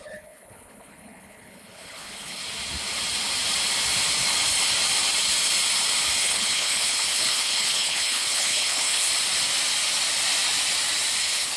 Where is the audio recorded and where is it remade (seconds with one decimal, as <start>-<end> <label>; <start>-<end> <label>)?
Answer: 0.0-2.4 remade; 2.4-6.2 recorded; 6.2-9.1 remade; 9.1-11.2 recorded; 11.2-11.6 remade